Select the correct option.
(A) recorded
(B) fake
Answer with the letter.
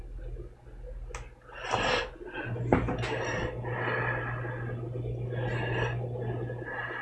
A